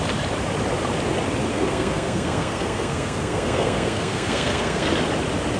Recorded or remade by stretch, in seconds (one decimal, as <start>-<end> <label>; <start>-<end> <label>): 0.0-1.5 recorded; 1.5-4.9 remade; 4.9-5.6 recorded